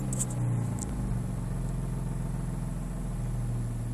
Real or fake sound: real